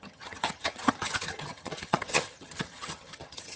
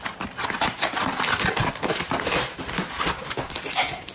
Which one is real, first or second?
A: second